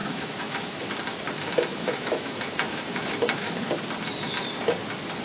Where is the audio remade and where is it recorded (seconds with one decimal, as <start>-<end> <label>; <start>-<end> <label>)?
0.0-0.8 remade; 0.8-1.7 recorded; 1.7-3.8 remade; 3.8-5.2 recorded